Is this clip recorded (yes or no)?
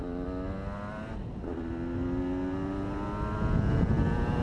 yes